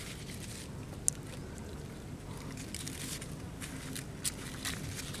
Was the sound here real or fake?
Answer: real